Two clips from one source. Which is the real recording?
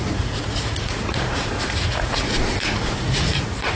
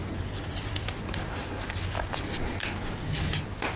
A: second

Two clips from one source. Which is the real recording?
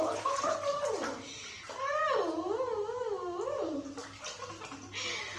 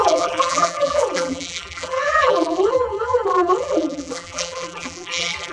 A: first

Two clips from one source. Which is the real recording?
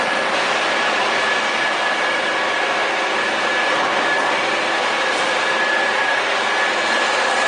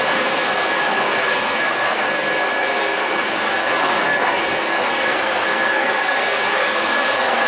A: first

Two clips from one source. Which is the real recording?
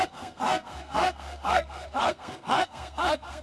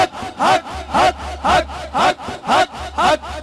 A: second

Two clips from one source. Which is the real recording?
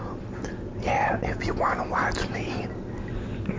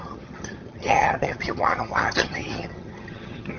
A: first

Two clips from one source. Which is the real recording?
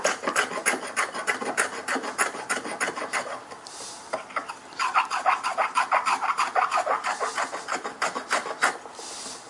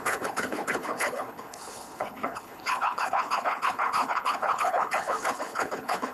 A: first